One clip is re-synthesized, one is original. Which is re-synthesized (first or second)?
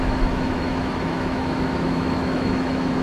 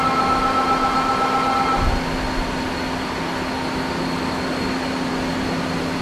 first